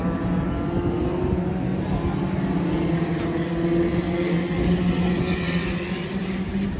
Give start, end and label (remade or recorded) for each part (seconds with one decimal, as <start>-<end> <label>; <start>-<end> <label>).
0.0-6.2 recorded; 6.2-6.8 remade

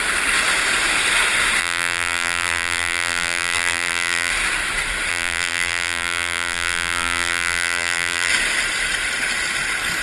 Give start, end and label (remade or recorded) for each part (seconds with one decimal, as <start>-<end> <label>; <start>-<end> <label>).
0.0-1.6 recorded; 1.6-4.3 remade; 4.3-5.1 recorded; 5.1-8.3 remade; 8.3-10.0 recorded

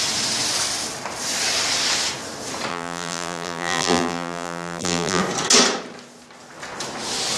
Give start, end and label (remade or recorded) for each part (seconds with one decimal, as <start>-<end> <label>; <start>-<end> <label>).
0.0-2.7 recorded; 2.7-5.2 remade; 5.2-7.4 recorded

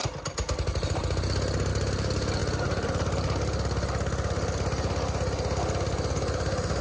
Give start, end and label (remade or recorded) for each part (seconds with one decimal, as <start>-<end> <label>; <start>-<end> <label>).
0.0-1.7 recorded; 1.7-2.4 remade; 2.4-6.8 recorded

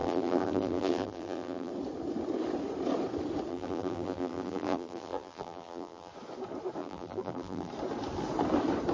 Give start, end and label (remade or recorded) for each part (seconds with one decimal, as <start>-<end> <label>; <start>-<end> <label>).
0.0-1.7 remade; 1.7-3.5 recorded; 3.5-6.1 remade; 6.1-6.8 recorded; 6.8-7.7 remade; 7.7-8.9 recorded

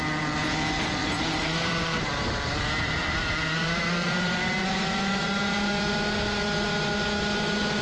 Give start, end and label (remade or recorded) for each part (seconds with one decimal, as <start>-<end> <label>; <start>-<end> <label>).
0.0-1.0 recorded; 1.0-5.7 remade; 5.7-7.8 recorded